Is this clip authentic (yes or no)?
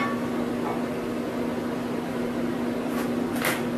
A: yes